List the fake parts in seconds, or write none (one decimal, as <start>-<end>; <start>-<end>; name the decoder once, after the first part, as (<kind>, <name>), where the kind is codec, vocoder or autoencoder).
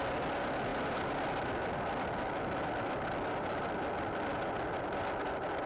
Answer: none